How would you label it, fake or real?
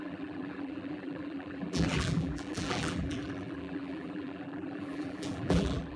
fake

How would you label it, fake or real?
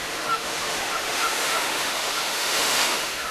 fake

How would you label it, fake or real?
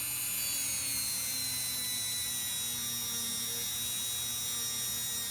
real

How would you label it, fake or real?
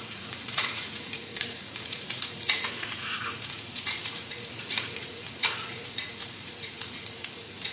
fake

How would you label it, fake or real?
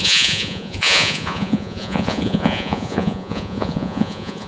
fake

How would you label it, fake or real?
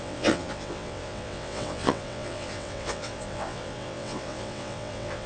fake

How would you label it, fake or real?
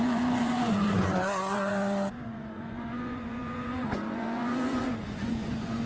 fake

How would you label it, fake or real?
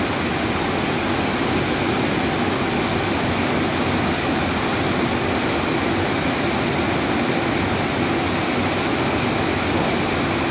real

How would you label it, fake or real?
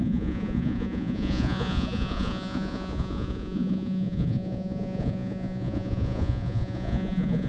fake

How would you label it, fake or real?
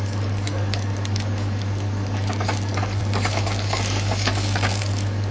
fake